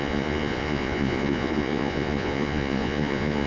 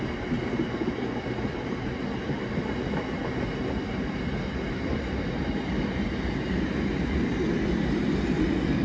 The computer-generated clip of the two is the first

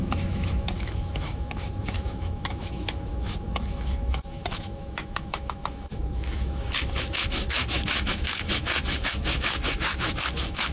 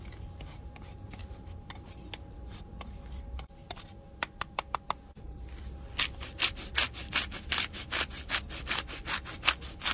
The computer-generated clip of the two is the first